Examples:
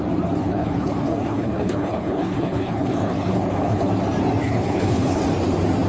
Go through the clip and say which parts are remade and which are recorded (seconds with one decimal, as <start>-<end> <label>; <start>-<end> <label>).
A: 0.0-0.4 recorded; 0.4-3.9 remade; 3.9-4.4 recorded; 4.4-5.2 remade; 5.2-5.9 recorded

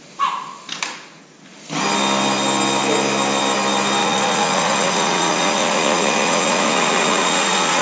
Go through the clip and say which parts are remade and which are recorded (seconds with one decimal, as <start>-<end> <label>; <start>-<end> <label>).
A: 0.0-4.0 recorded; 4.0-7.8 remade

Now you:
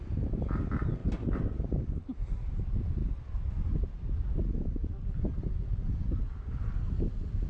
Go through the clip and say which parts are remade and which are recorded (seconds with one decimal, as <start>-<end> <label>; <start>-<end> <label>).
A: 0.0-1.0 recorded; 1.0-1.8 remade; 1.8-5.3 recorded; 5.3-6.2 remade; 6.2-7.5 recorded

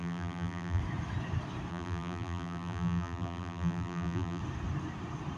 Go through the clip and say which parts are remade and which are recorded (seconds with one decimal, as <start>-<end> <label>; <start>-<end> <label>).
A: 0.0-0.8 remade; 0.8-1.7 recorded; 1.7-4.4 remade; 4.4-5.4 recorded